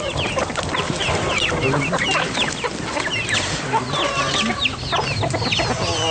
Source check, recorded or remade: recorded